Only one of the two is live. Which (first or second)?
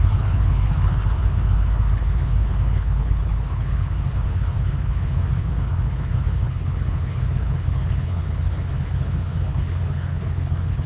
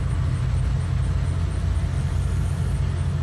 second